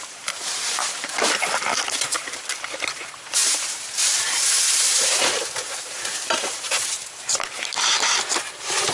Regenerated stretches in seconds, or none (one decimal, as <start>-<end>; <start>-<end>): 0.0-8.9